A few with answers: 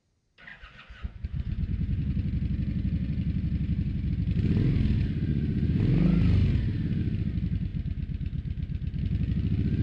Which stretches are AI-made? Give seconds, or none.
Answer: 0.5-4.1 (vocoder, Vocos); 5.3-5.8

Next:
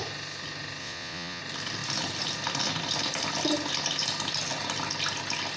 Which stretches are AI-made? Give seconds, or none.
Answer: 0.8-1.4 (vocoder, Vocos)

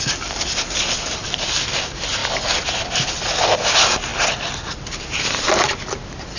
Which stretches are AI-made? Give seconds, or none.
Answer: none